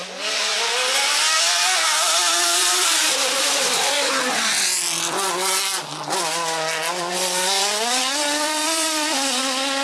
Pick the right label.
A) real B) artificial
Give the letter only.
B